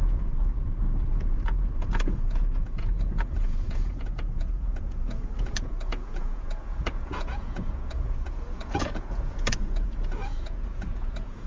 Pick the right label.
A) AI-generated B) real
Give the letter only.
A